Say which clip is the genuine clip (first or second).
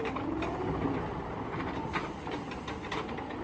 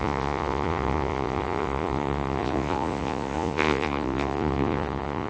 first